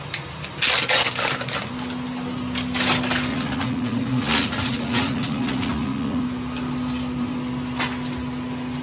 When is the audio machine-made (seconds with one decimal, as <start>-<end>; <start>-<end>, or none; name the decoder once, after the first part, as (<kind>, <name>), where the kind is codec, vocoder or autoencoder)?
3.3-6.2 (vocoder, Vocos)